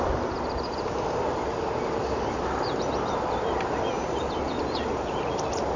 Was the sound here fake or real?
fake